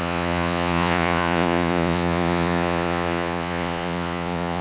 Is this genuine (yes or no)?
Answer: no